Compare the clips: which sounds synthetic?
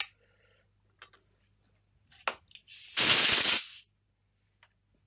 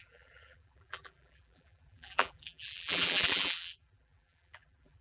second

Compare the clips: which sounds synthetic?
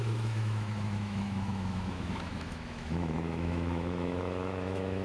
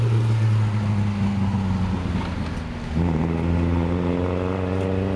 first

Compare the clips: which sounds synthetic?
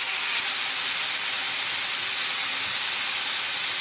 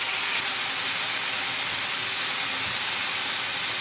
first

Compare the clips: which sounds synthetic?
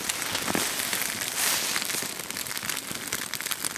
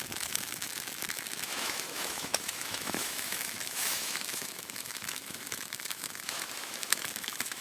second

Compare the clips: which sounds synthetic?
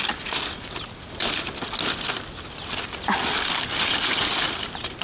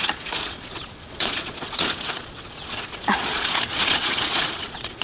second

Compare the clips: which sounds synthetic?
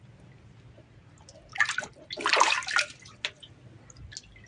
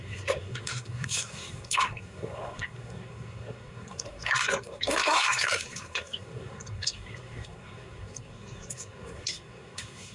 second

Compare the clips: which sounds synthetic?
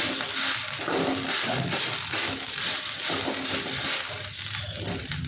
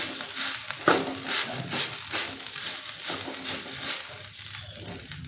first